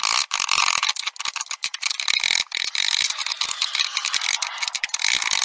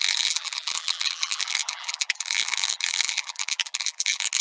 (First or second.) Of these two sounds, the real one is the first